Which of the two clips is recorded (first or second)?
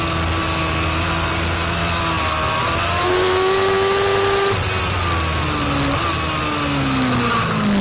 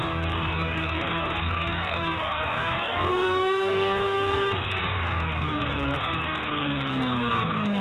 first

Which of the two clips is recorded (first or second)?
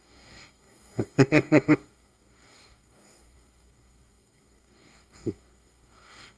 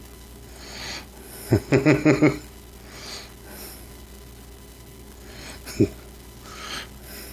second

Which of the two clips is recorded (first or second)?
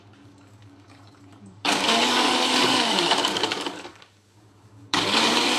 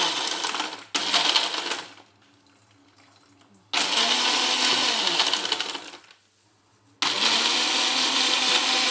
second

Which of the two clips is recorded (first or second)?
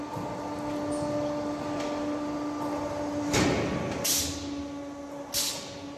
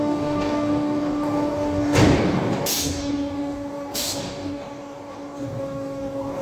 first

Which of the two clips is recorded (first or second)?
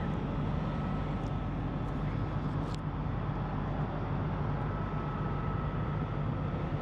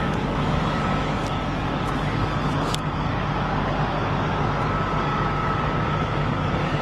first